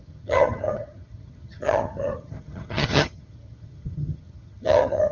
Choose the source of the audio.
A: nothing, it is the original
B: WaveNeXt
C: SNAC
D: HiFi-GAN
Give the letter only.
D